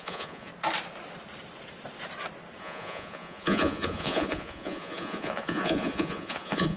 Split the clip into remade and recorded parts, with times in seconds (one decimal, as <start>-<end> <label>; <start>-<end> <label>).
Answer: 0.0-0.5 remade; 0.5-2.6 recorded; 2.6-6.8 remade